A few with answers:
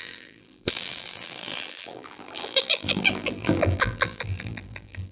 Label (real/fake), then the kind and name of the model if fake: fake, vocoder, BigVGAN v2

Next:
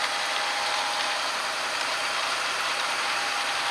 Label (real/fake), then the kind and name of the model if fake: fake, vocoder, BigVGAN v2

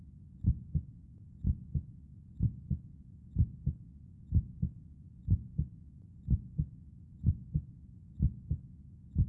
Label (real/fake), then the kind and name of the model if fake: fake, vocoder, Vocos